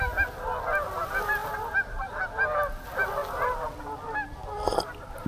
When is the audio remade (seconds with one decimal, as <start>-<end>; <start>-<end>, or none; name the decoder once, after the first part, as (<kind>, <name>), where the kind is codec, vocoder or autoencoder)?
none